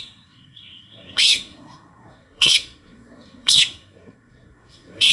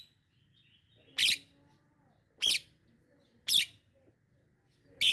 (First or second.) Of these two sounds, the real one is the second